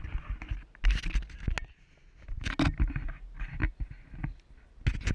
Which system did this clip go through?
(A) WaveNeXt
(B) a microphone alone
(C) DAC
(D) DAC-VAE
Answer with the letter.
B